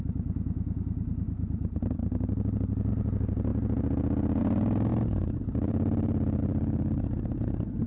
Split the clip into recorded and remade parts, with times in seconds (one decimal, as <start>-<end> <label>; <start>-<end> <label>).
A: 0.0-2.0 remade; 2.0-2.9 recorded; 2.9-3.5 remade; 3.5-4.4 recorded; 4.4-7.9 remade